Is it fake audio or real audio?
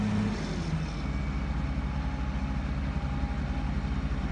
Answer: real